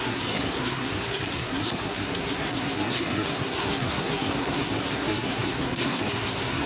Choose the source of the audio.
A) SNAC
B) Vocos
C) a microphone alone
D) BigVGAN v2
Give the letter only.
A